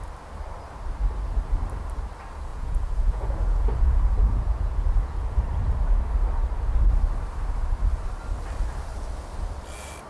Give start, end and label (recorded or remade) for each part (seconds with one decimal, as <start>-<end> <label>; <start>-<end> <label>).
0.0-2.5 recorded; 2.5-5.4 remade; 5.4-10.1 recorded